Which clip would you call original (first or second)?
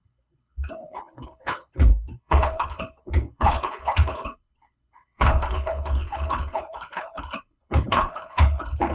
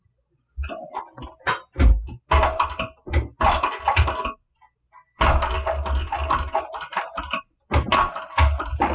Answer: second